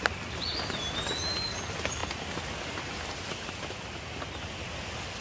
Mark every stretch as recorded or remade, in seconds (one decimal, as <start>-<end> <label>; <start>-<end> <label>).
0.0-5.2 recorded